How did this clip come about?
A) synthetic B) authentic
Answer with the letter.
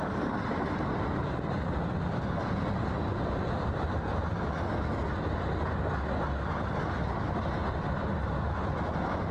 B